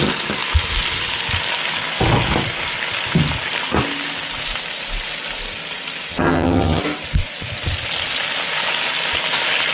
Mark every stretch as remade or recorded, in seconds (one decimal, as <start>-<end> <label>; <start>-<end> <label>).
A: 0.0-6.1 recorded; 6.1-6.8 remade; 6.8-9.7 recorded